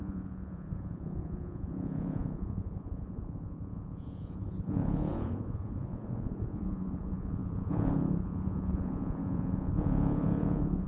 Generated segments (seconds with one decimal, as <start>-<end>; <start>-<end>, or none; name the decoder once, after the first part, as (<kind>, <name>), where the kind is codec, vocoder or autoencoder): 0.0-10.9 (vocoder, Vocos)

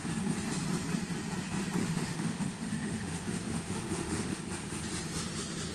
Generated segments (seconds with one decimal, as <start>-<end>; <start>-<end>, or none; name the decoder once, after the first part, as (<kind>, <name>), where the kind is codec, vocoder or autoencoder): 1.8-4.4 (autoencoder, DAC-VAE)

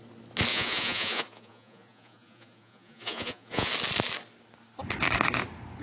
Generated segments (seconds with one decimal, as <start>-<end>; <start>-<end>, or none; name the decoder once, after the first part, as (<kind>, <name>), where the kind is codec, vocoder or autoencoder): 0.5-3.7 (vocoder, Vocos)

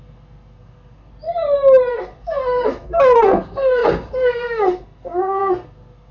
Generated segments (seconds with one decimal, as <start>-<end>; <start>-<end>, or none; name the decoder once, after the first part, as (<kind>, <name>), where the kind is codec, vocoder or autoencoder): 0.0-1.1 (codec, SNAC); 1.9-6.1

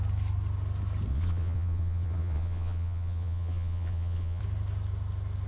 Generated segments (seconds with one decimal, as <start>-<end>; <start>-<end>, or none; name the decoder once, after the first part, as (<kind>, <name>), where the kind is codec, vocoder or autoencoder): 1.1-4.4 (vocoder, Vocos)

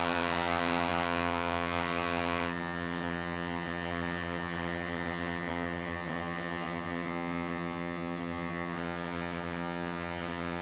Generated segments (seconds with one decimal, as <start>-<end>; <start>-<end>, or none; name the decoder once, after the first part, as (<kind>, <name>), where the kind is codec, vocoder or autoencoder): 0.0-10.6 (vocoder, HiFi-GAN)

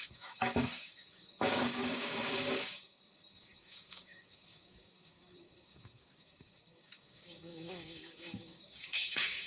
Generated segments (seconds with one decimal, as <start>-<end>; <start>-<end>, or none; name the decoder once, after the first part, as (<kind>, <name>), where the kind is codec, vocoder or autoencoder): 0.0-9.5 (codec, DAC)

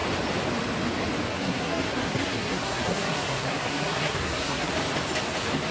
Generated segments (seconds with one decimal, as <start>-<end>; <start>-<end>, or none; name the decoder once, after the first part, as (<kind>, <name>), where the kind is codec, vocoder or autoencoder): 1.3-4.7 (codec, SNAC)